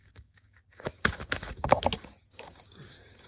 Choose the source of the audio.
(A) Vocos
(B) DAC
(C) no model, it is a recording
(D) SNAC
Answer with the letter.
B